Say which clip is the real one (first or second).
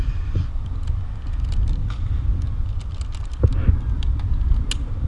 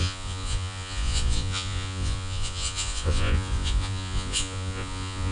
first